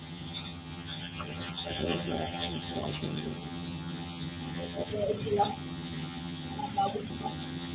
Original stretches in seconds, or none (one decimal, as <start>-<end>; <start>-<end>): 4.9-5.5; 6.6-7.1